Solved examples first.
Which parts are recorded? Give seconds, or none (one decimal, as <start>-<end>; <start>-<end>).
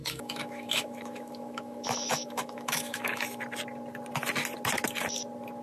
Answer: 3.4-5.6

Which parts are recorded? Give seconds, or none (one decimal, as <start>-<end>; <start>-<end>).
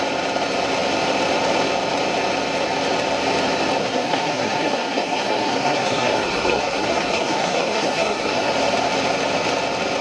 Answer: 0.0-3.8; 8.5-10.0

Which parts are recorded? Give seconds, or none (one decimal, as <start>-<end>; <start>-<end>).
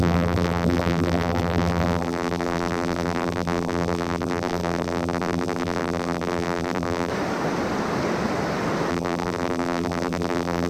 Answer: 7.1-8.9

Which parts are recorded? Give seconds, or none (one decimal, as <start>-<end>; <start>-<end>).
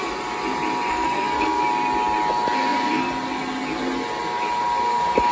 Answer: 0.0-0.9; 1.6-5.3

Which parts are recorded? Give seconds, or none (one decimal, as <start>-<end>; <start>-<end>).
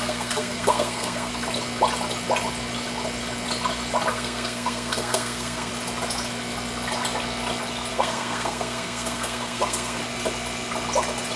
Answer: 1.3-4.1; 5.7-7.9; 10.0-11.4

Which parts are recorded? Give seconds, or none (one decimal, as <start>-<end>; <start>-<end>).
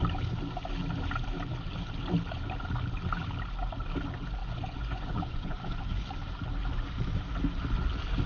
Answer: 0.0-4.4; 6.1-8.3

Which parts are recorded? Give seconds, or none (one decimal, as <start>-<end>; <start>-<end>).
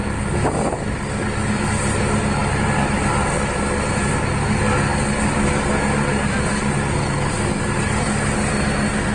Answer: 0.0-9.1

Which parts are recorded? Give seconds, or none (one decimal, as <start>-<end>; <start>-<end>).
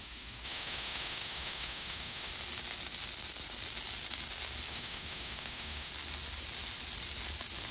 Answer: 2.3-4.7; 5.9-7.7